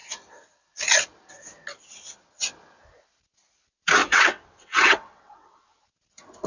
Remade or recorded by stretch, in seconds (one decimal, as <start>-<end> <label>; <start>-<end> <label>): 0.0-4.0 recorded; 4.0-5.8 remade; 5.8-6.5 recorded